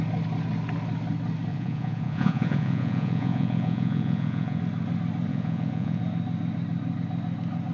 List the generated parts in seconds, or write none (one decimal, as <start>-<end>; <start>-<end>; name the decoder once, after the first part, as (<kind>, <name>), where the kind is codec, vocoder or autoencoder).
1.5-4.6 (vocoder, Vocos); 5.3-6.0